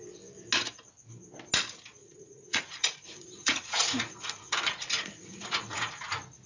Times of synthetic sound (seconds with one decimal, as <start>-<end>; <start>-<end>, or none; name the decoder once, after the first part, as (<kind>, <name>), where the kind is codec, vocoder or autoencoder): 2.0-5.9 (vocoder, Vocos)